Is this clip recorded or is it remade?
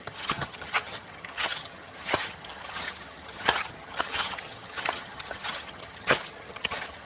remade